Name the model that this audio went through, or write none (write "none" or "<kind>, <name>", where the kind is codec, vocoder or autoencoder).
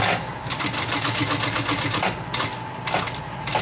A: none